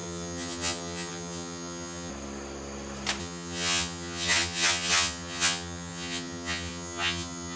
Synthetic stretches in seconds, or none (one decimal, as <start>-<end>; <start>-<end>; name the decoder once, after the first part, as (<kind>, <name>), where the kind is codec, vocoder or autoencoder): 0.0-2.1 (vocoder, HiFi-GAN); 3.2-7.6